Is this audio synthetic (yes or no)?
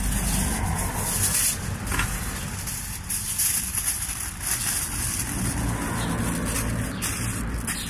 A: no